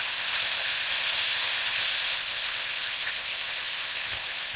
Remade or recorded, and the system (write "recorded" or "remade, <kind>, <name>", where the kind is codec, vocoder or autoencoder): remade, codec, ZipCodec